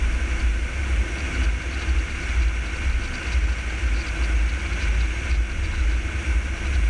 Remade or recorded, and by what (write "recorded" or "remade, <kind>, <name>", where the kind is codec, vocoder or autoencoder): recorded